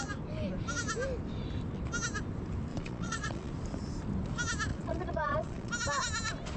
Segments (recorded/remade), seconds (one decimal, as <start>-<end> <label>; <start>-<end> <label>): 0.0-2.7 recorded; 2.7-3.5 remade; 3.5-4.7 recorded; 4.7-5.7 remade; 5.7-6.6 recorded